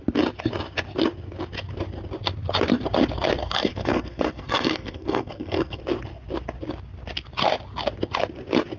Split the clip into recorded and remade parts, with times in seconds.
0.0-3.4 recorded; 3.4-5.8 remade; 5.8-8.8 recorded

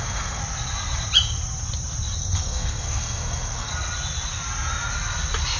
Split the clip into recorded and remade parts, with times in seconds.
0.0-0.4 remade; 0.4-2.2 recorded; 2.2-3.7 remade; 3.7-5.6 recorded

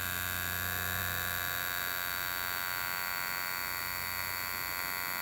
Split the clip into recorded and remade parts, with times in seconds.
0.0-5.2 recorded

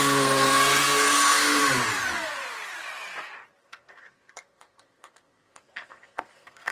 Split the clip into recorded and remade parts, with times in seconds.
0.0-1.6 remade; 1.6-3.6 recorded; 3.6-6.7 remade

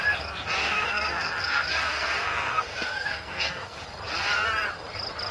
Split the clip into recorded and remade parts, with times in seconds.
0.0-0.6 recorded; 0.6-3.8 remade; 3.8-5.3 recorded